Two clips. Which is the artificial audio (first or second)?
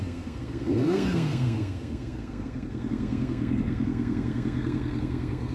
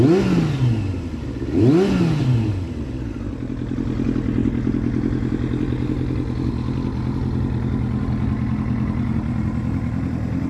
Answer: first